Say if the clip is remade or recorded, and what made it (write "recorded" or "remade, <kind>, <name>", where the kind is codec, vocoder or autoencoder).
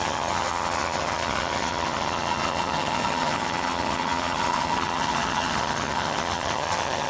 remade, vocoder, HiFi-GAN